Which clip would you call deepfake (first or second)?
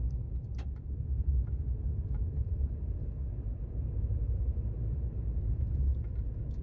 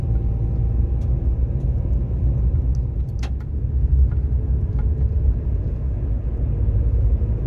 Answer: first